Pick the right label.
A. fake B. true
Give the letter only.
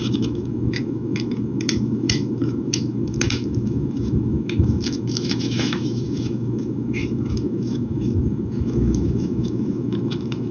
A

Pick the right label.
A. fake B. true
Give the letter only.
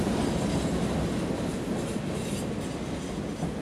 B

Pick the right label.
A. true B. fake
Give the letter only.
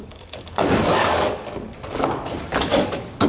B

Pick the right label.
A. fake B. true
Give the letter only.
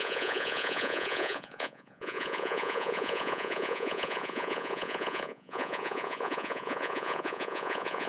A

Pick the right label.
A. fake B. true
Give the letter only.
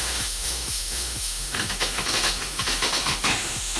A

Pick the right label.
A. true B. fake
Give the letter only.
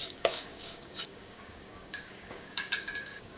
B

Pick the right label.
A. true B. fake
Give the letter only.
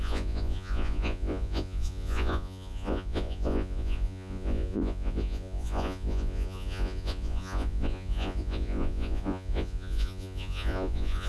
B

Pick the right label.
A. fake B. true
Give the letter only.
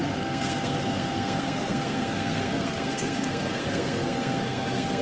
A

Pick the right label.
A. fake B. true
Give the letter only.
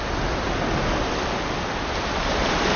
B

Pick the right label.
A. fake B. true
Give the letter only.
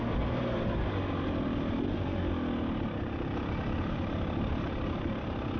B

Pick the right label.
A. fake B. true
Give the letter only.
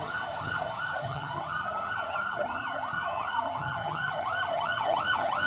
A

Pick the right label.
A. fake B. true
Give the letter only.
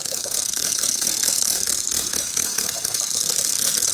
A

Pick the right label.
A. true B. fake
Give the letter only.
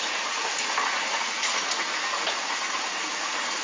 B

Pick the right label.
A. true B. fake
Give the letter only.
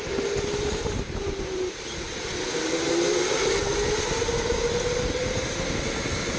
A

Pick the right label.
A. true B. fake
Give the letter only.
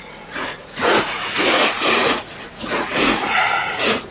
B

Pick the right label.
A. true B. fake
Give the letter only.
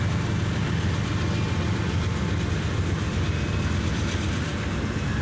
A